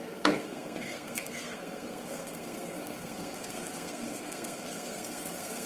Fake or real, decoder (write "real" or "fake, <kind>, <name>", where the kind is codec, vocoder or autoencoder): fake, codec, SNAC